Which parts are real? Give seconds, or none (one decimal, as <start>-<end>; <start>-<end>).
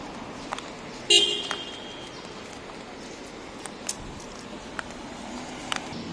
0.0-6.1